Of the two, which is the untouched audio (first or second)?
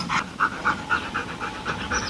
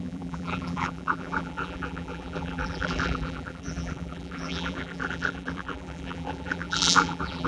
first